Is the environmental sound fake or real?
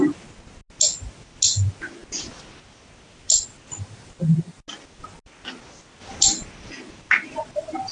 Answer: real